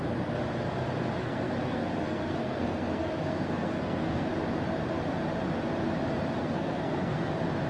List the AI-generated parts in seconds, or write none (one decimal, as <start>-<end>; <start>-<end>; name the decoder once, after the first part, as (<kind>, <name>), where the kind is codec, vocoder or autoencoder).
1.2-4.3 (codec, SNAC); 6.4-7.3